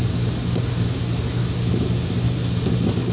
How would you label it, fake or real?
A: real